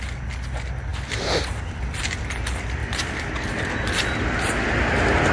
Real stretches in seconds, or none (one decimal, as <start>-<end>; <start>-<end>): 0.0-5.3